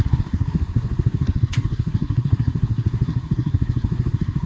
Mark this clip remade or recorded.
remade